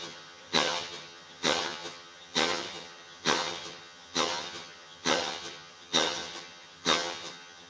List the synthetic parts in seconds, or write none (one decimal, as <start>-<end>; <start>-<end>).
0.0-7.7